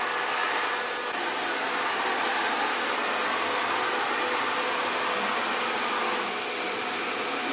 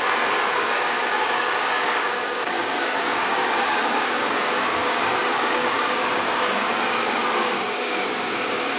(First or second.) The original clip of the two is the first